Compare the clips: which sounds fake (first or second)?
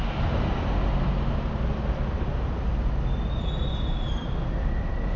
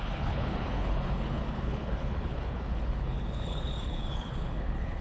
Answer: second